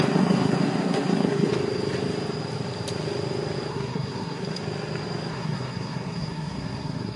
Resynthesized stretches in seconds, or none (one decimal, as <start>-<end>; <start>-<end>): 0.0-1.5; 3.7-4.6; 5.3-7.2